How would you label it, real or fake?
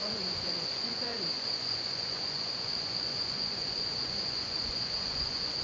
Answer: fake